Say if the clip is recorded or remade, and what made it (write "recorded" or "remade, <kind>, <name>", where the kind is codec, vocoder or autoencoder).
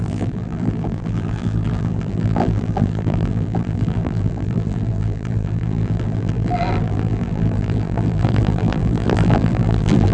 remade, vocoder, BigVGAN v2